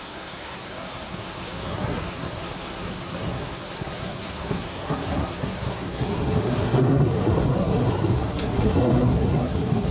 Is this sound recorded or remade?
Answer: remade